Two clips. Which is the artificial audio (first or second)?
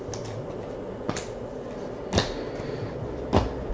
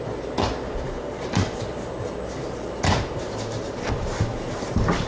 second